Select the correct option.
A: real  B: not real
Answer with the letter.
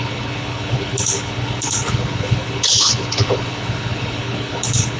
B